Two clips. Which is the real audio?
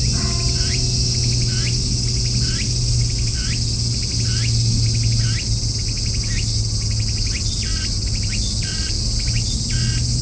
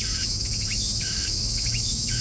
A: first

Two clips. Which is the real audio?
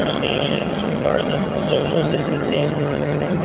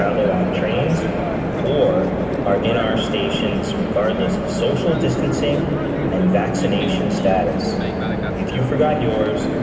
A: second